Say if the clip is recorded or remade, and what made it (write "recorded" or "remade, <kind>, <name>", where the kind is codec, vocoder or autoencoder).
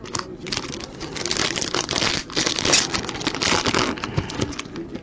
recorded